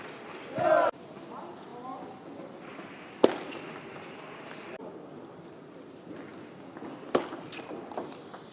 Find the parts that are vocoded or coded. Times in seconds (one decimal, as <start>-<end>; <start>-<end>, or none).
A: none